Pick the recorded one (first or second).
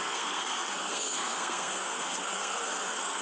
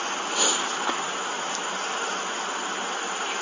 second